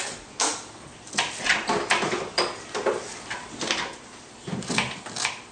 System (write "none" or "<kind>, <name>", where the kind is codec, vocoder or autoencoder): vocoder, BigVGAN v2